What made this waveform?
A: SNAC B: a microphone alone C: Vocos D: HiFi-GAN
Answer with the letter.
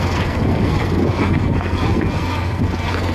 A